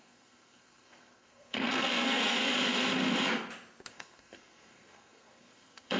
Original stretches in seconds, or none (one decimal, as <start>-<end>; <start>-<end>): 2.5-3.9